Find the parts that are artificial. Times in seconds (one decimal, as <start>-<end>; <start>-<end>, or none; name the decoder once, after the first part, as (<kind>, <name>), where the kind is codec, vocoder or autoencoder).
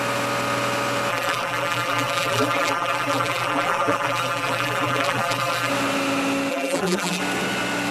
1.1-5.7 (vocoder, BigVGAN v2); 6.5-7.2